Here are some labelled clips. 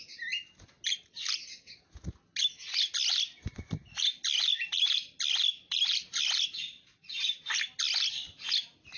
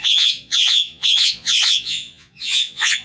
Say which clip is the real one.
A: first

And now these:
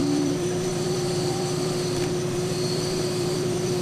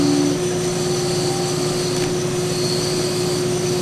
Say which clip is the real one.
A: second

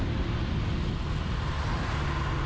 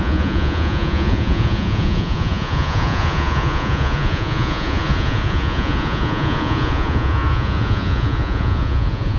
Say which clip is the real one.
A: first